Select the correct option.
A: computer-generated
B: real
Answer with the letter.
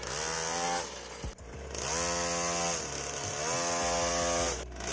B